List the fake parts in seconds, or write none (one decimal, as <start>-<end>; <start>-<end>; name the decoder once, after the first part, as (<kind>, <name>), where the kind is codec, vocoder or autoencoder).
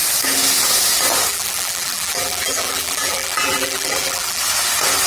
1.3-4.4 (vocoder, BigVGAN v2)